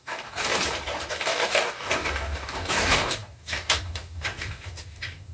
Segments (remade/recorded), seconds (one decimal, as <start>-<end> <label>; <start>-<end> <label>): 0.0-0.5 remade; 0.5-1.1 recorded; 1.1-5.3 remade